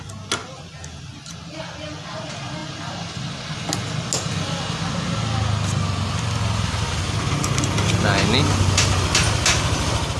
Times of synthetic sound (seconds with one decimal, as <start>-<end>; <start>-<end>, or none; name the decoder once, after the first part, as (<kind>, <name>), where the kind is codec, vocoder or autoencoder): none